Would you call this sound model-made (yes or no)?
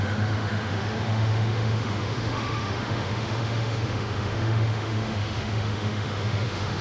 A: yes